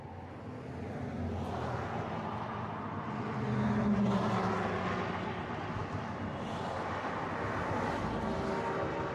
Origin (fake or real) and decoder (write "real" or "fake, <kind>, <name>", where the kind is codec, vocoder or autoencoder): real